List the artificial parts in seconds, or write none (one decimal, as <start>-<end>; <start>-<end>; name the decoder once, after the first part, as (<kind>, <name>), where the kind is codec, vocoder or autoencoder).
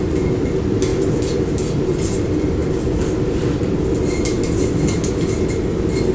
none